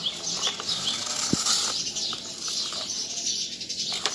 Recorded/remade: recorded